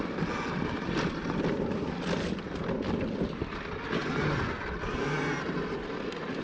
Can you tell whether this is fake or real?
real